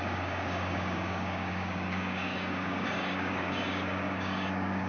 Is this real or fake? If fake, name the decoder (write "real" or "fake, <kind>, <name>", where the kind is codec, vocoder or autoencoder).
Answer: fake, codec, DAC